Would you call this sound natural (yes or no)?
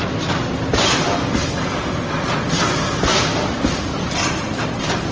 yes